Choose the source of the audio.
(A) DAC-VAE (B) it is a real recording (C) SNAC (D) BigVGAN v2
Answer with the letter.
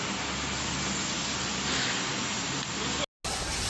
B